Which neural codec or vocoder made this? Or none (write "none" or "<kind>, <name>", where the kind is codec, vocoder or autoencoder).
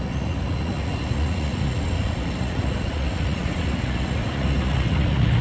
vocoder, Vocos